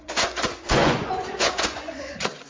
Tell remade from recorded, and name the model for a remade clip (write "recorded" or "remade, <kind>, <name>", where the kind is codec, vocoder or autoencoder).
remade, vocoder, Vocos